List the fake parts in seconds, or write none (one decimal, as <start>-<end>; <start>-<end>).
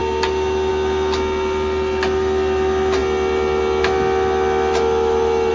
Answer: none